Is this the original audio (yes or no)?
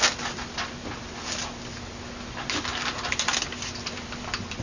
yes